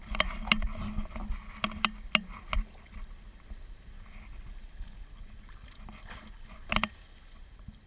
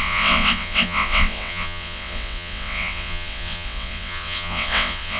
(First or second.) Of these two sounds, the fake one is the second